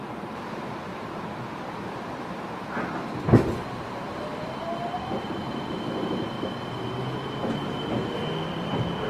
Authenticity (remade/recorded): remade